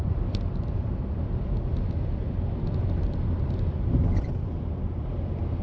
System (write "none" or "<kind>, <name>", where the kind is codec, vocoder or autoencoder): none